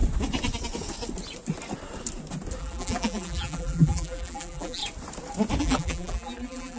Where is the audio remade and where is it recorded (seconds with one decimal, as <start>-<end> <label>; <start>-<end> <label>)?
0.0-2.6 recorded; 2.6-4.8 remade; 4.8-5.6 recorded; 5.6-6.8 remade